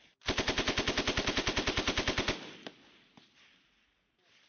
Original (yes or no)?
yes